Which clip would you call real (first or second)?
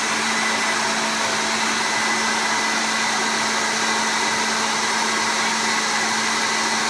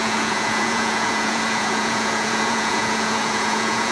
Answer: first